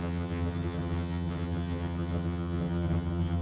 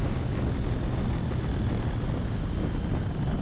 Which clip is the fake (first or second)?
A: first